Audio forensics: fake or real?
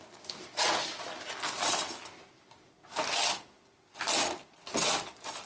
real